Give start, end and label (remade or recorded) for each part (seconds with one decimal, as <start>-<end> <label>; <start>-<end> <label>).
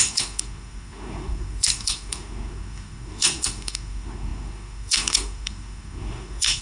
0.0-6.6 remade